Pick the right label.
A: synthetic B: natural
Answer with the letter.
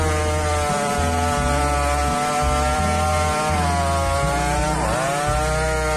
B